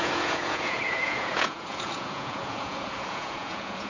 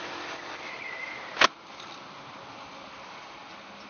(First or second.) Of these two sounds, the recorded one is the second